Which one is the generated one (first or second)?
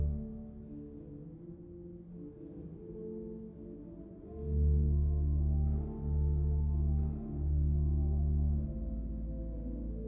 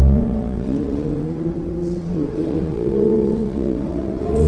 second